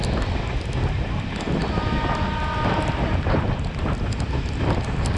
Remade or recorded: recorded